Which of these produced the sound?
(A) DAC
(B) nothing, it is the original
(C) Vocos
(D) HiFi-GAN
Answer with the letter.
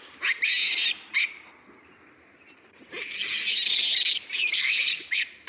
B